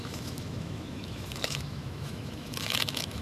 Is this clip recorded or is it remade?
remade